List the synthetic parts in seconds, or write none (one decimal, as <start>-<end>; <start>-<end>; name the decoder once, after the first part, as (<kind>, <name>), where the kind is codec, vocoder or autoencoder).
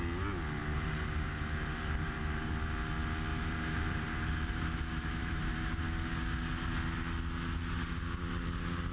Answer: 0.6-2.9 (vocoder, BigVGAN v2); 3.3-5.8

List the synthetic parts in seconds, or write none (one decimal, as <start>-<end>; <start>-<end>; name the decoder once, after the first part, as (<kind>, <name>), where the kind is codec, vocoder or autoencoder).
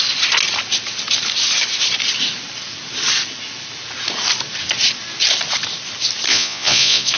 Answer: 6.3-7.2 (vocoder, Vocos)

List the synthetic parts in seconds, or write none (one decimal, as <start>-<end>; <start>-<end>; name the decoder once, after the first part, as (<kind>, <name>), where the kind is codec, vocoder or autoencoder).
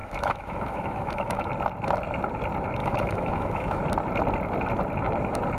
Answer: 0.0-1.5 (autoencoder, DAC-VAE); 2.8-3.8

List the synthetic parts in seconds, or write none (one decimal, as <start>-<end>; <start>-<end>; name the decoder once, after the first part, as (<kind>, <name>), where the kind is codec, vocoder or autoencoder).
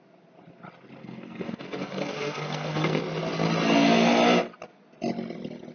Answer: 1.0-3.0 (codec, SNAC)